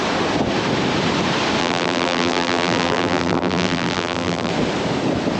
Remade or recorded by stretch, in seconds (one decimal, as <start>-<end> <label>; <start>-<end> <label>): 0.0-1.6 recorded; 1.6-4.5 remade; 4.5-5.4 recorded